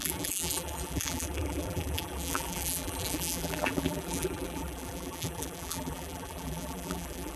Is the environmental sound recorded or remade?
remade